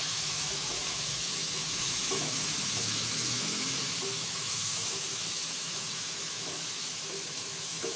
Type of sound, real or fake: fake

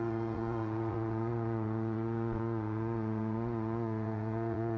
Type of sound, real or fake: fake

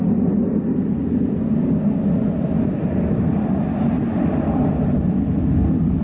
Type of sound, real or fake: real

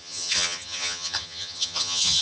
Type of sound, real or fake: fake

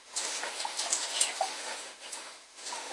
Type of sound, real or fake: fake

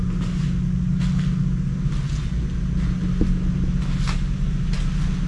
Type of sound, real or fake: real